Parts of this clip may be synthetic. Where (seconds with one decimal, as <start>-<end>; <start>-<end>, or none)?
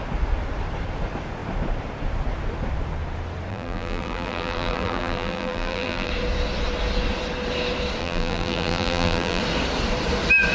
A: 3.5-6.1; 8.0-9.4